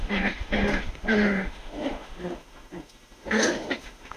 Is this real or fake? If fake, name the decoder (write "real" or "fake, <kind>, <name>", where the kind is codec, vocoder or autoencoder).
fake, autoencoder, DAC-VAE